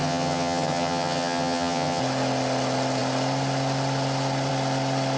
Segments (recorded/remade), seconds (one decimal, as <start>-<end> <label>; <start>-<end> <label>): 0.0-2.0 remade; 2.0-5.2 recorded